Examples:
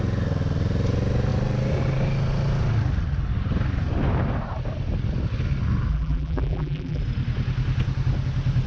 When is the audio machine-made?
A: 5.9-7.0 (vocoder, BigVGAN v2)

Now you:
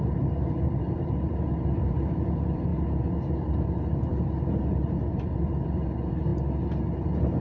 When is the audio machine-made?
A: 0.0-2.7 (vocoder, BigVGAN v2); 3.6-4.1; 4.7-6.3

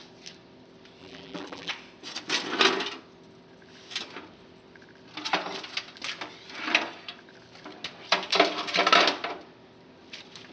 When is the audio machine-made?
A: 1.0-1.7 (vocoder, BigVGAN v2)